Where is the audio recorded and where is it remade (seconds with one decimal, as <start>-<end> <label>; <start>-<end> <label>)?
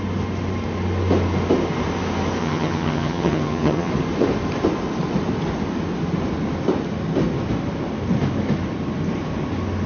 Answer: 0.0-2.4 recorded; 2.4-3.9 remade; 3.9-9.9 recorded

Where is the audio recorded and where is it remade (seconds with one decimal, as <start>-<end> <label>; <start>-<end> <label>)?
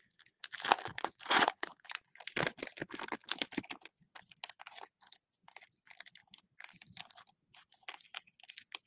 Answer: 0.0-0.9 recorded; 0.9-2.1 remade; 2.1-8.9 recorded